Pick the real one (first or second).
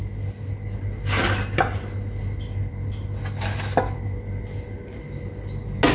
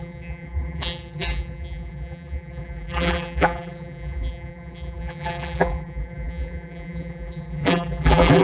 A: first